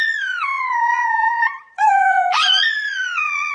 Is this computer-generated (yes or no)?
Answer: yes